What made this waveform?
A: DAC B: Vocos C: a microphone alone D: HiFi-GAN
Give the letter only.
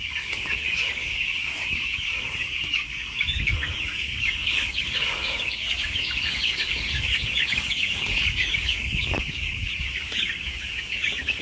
A